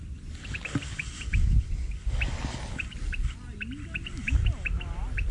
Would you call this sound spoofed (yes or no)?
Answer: no